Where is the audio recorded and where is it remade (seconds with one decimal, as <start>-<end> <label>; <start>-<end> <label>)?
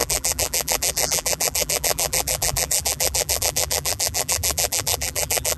0.0-5.6 remade